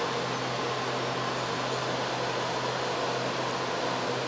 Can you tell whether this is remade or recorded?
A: recorded